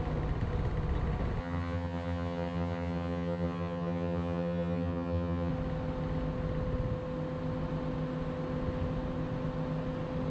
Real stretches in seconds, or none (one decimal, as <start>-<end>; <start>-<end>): 0.0-1.4; 5.5-10.3